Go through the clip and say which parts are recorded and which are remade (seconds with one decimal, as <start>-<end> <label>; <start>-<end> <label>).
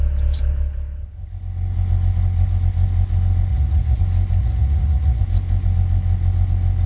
0.0-3.5 recorded; 3.5-4.0 remade; 4.0-4.4 recorded; 4.4-5.2 remade; 5.2-6.9 recorded